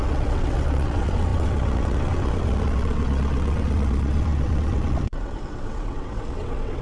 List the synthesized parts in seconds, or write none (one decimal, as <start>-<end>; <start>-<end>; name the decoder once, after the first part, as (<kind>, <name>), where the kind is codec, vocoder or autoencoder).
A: 0.0-6.8 (vocoder, WaveNeXt)

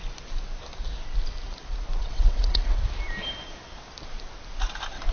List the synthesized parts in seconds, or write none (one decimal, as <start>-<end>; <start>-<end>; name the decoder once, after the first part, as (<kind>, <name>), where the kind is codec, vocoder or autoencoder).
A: 2.0-2.8 (vocoder, WaveNeXt)

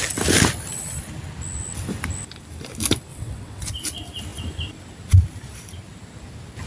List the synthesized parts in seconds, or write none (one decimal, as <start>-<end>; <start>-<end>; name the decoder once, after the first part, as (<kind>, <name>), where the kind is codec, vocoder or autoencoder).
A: 3.1-3.7 (vocoder, WaveNeXt)

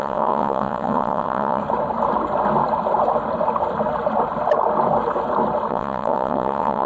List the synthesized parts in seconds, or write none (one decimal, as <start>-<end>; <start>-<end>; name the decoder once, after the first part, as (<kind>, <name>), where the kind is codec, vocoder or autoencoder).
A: 0.0-1.6 (vocoder, WaveNeXt); 5.7-6.9

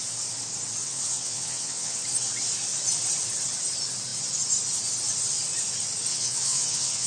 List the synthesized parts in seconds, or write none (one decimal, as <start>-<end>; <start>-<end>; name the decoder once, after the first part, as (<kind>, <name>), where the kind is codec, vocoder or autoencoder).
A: 0.8-2.0 (vocoder, WaveNeXt); 6.1-7.1

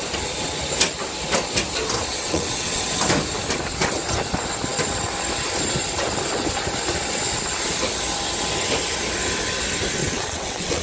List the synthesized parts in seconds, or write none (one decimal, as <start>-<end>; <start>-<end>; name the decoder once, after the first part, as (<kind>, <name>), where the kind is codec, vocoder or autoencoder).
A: 2.2-2.8 (vocoder, WaveNeXt); 10.0-10.8